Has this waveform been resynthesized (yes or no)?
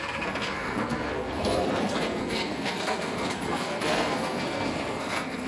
yes